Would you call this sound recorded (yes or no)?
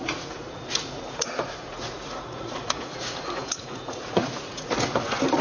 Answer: no